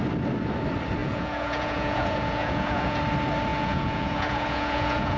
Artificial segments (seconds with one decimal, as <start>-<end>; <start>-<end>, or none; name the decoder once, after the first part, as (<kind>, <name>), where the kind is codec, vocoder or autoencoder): 1.0-3.0 (vocoder, Vocos); 3.5-5.2